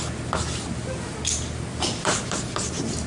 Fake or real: real